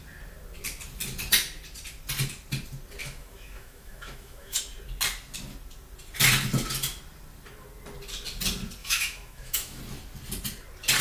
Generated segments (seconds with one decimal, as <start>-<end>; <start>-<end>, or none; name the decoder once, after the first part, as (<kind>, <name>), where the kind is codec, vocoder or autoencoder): 3.0-4.6 (autoencoder, DAC-VAE); 8.8-9.8